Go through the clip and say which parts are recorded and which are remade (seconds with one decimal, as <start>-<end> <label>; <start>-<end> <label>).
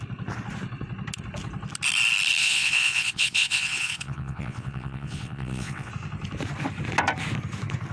0.0-2.4 recorded; 2.4-5.9 remade; 5.9-7.9 recorded